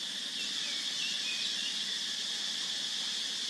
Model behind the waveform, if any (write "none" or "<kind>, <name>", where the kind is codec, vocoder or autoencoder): none